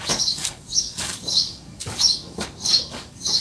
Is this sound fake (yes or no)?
yes